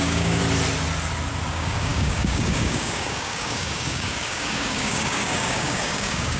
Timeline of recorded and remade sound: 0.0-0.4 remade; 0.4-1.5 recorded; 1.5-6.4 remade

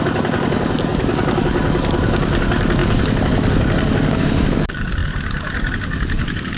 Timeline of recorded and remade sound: 0.0-6.6 remade

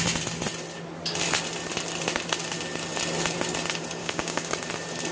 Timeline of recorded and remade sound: 0.0-4.0 recorded; 4.0-4.5 remade; 4.5-5.1 recorded

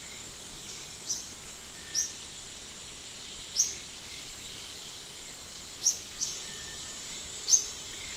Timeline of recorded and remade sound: 0.0-1.9 remade; 1.9-4.0 recorded; 4.0-8.2 remade

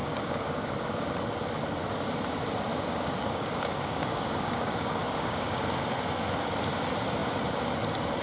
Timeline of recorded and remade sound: 0.0-0.7 remade; 0.7-2.7 recorded; 2.7-5.6 remade; 5.6-8.2 recorded

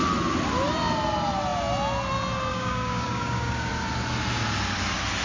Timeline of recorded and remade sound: 0.0-2.5 recorded; 2.5-3.7 remade; 3.7-5.2 recorded